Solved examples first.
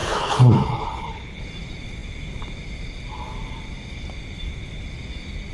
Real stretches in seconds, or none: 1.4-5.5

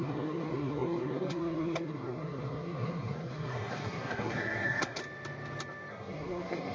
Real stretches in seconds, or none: 5.0-5.9

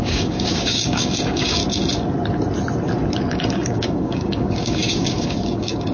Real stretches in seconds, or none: 1.6-3.3